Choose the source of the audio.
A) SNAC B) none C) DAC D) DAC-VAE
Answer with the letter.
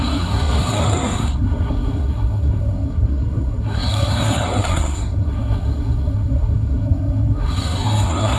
A